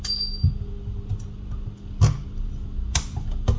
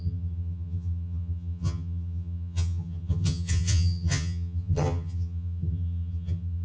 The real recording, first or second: first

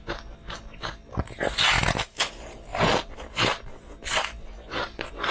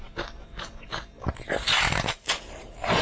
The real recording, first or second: first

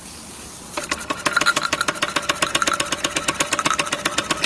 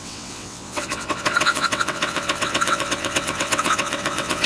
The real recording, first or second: first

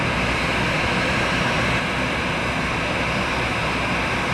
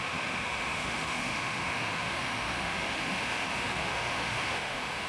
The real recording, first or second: first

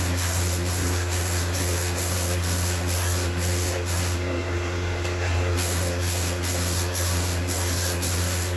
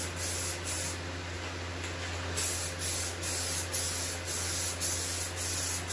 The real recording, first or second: second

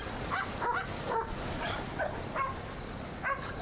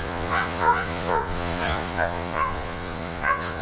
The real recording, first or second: first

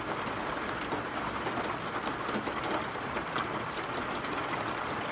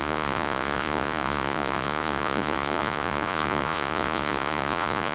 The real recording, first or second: first